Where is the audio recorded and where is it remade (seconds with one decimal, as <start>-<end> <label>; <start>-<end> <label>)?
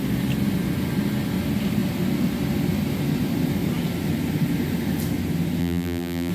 0.0-5.6 recorded; 5.6-6.3 remade